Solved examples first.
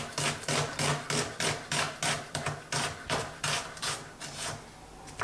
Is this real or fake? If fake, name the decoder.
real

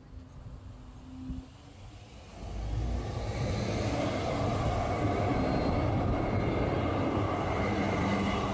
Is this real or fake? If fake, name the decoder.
real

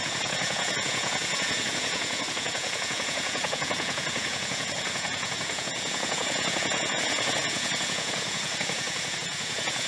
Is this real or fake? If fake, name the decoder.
fake, vocoder, Vocos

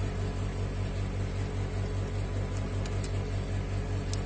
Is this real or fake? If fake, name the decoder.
real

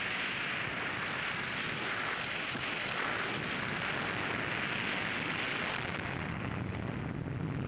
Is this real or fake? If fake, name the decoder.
real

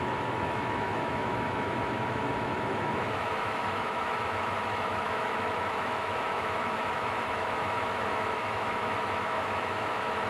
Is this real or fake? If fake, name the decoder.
fake, autoencoder, DAC-VAE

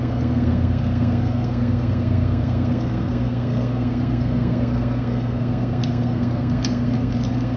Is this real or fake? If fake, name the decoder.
fake, codec, SNAC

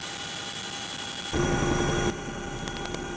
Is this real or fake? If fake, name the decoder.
real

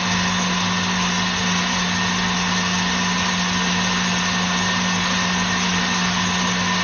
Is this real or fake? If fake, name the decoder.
real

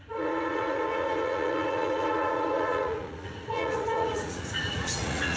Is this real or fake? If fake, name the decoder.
fake, vocoder, Vocos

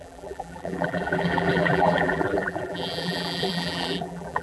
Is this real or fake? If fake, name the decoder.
fake, vocoder, BigVGAN v2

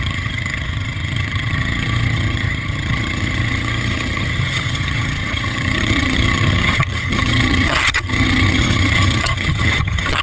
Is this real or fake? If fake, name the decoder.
fake, vocoder, HiFi-GAN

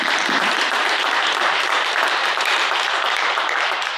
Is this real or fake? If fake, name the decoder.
fake, vocoder, BigVGAN v2